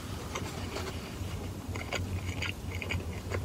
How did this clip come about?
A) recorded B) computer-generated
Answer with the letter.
B